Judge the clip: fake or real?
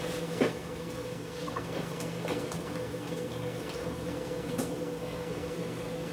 fake